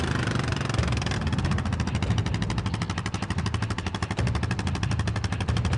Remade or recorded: recorded